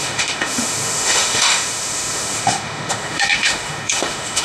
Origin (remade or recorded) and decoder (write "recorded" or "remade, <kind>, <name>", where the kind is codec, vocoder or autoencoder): remade, autoencoder, DAC-VAE